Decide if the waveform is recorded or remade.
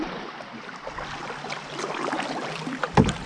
remade